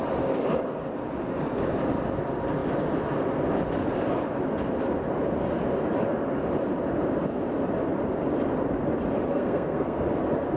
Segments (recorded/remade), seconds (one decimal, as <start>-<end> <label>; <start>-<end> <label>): 0.0-9.3 recorded; 9.3-10.0 remade; 10.0-10.6 recorded